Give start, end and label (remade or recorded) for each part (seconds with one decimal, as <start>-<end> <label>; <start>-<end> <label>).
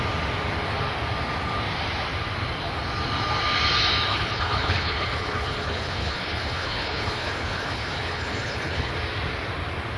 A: 0.0-4.1 recorded; 4.1-8.9 remade; 8.9-10.0 recorded